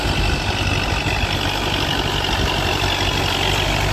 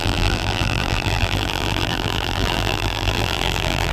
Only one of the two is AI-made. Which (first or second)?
second